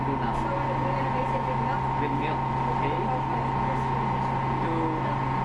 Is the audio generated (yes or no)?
no